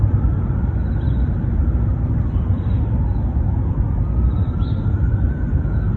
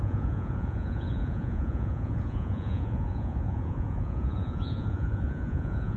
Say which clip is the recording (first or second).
first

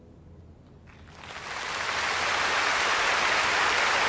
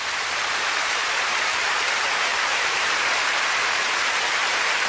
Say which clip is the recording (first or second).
first